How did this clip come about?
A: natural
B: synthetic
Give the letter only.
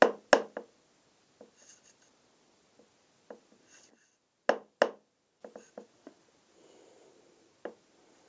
A